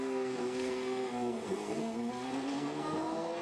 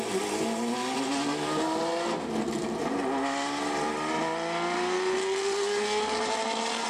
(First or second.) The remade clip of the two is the first